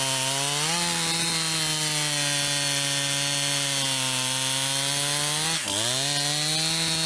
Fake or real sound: real